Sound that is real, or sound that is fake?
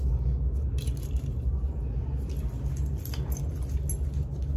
real